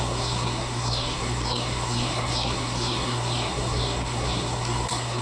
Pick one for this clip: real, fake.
fake